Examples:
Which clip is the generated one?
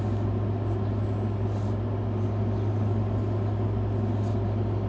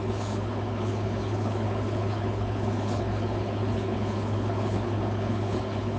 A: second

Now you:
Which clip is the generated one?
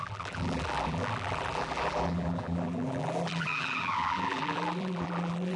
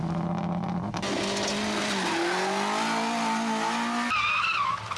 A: first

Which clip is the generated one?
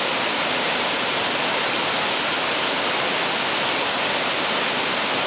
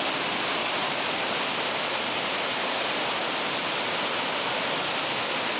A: second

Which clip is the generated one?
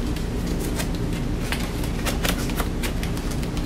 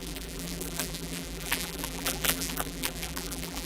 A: second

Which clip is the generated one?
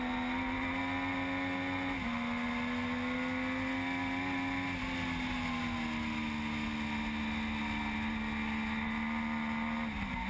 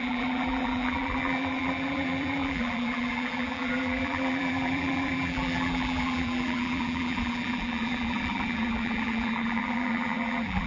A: second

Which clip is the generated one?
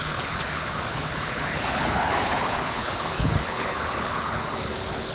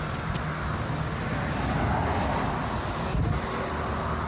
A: first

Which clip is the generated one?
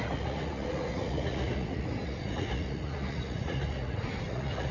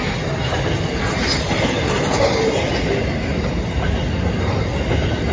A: first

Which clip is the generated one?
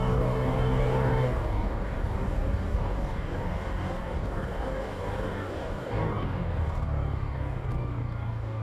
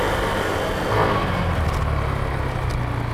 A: first